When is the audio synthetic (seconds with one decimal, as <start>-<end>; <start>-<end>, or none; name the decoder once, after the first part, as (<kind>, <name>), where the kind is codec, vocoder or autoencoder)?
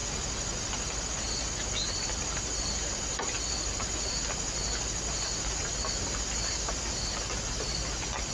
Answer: none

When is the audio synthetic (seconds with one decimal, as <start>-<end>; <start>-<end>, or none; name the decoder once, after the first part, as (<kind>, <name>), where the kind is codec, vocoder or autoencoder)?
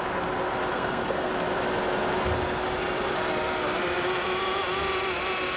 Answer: 0.7-1.3 (codec, SNAC)